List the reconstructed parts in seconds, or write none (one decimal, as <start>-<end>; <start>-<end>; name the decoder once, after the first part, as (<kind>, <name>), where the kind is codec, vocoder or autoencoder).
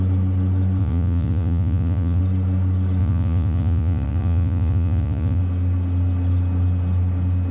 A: 0.8-2.2 (vocoder, Vocos); 3.0-5.4